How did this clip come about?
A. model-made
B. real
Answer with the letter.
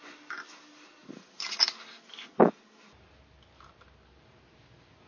B